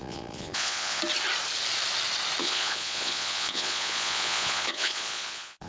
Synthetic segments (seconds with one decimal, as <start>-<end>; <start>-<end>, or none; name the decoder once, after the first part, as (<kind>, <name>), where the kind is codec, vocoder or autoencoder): 0.0-1.0 (vocoder, Vocos); 2.4-5.7